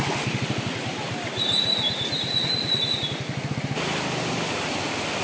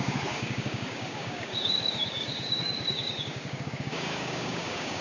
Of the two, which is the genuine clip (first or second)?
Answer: first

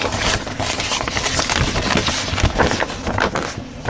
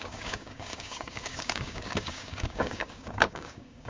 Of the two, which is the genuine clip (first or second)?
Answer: first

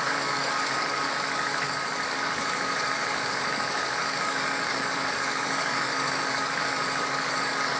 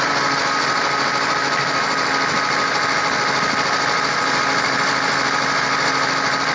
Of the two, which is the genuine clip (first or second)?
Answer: second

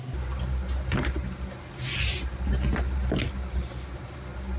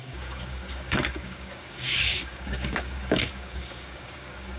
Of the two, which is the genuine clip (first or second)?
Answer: first